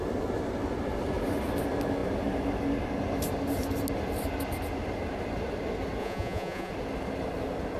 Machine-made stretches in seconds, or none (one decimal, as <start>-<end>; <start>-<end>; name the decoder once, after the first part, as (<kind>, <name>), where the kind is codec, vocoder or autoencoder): 6.0-6.7 (vocoder, Vocos)